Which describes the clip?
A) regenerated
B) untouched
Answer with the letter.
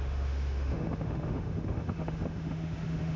A